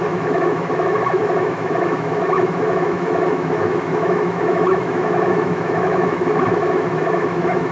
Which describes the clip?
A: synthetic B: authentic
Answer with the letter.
A